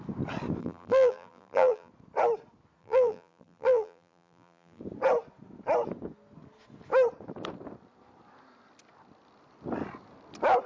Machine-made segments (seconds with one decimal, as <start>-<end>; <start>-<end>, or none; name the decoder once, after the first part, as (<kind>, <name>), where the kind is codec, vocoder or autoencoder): 0.6-1.9 (vocoder, BigVGAN v2); 2.8-4.8